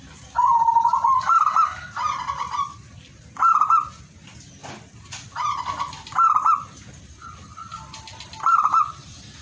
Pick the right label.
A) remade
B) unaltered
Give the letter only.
B